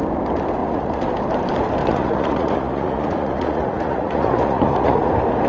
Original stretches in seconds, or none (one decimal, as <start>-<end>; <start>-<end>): 0.0-0.6; 1.1-1.8; 5.1-5.5